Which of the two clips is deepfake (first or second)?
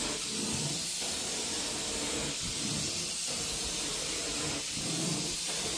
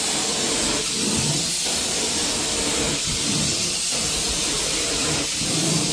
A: second